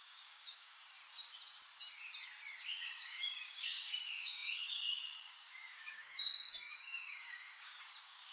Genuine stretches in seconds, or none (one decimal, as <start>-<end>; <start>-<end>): 1.0-2.6

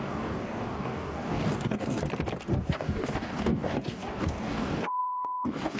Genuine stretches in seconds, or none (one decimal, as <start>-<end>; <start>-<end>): 2.0-2.6

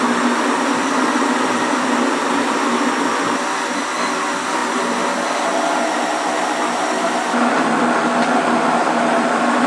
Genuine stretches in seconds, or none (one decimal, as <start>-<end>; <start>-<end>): 0.0-9.7

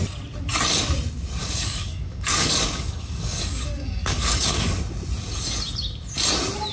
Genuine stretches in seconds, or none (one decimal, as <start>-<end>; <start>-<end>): 0.0-1.4; 4.8-6.7

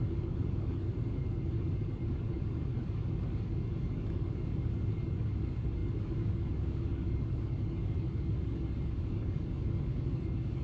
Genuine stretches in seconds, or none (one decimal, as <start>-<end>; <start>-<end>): none

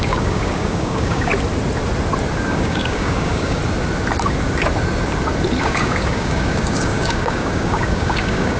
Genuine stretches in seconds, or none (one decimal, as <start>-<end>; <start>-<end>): 1.3-2.5; 3.6-5.6

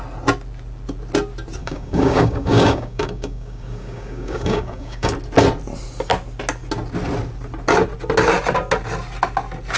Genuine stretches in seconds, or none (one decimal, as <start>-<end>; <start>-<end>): 0.0-1.6; 5.1-9.8